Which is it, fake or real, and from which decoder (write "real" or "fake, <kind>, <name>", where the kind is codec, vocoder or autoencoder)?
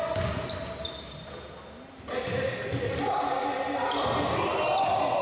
real